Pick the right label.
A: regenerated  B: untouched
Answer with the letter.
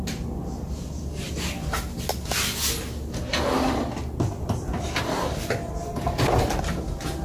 B